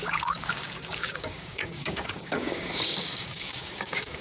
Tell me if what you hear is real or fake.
fake